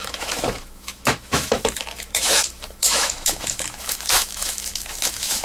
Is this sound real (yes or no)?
no